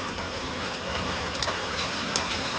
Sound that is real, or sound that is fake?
fake